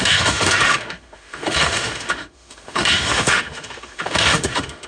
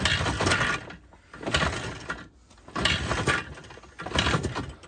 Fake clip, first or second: first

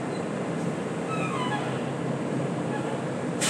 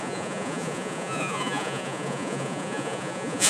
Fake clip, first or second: second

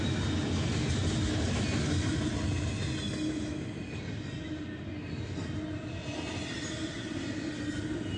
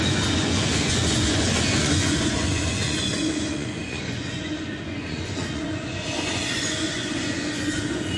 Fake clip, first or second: second